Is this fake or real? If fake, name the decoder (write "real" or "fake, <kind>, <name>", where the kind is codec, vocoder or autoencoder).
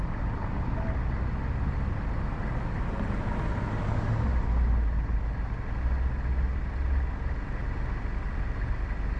real